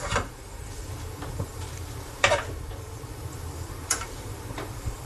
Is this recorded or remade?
remade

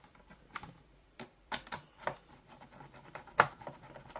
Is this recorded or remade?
remade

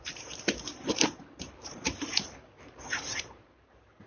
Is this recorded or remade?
remade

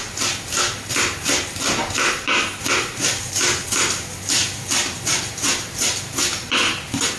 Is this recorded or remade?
remade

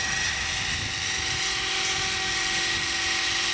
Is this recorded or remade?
recorded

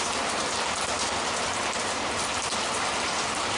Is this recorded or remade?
recorded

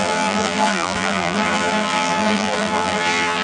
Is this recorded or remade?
remade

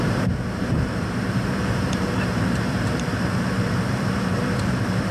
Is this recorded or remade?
remade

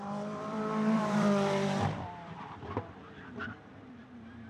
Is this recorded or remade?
remade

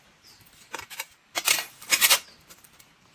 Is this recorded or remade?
recorded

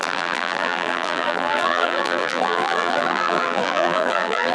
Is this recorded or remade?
remade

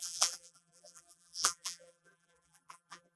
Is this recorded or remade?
remade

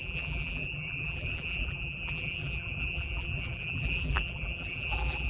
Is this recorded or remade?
remade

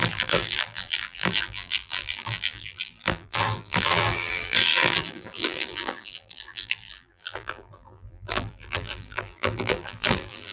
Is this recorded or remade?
remade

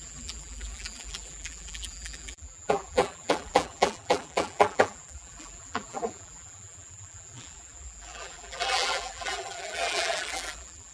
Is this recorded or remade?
remade